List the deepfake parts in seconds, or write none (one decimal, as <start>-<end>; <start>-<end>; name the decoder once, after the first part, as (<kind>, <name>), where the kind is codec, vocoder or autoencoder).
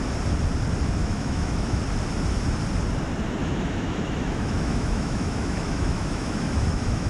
1.0-1.8 (autoencoder, DAC-VAE); 3.4-7.1